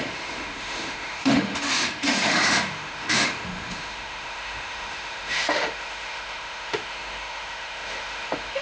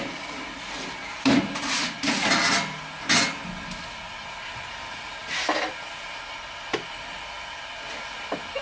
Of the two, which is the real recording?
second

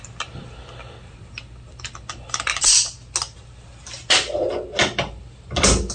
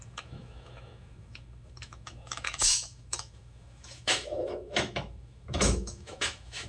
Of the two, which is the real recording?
first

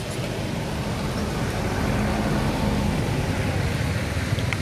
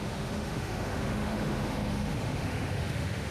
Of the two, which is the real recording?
first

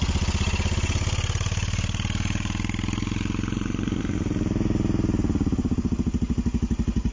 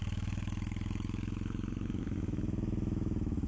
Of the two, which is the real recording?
first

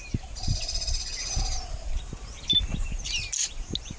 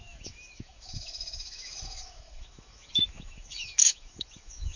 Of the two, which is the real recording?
first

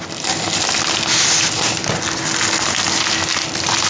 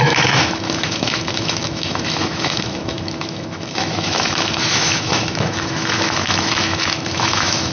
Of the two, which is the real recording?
first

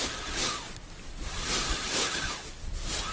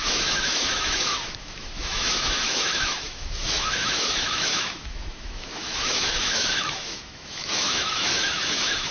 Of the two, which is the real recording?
first